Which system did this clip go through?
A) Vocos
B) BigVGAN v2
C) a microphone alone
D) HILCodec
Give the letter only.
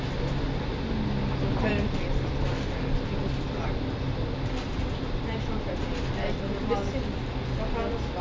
C